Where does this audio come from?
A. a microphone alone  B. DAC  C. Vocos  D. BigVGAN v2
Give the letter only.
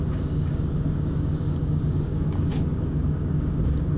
B